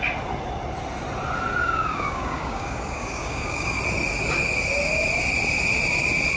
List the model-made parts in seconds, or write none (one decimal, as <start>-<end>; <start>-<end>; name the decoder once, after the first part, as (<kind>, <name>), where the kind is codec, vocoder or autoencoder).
1.6-3.8 (codec, DAC)